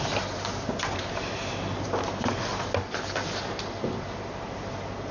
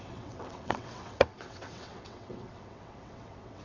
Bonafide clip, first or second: first